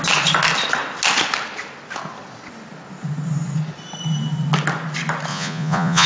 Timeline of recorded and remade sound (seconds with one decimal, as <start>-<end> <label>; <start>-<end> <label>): 0.0-5.3 recorded; 5.3-6.1 remade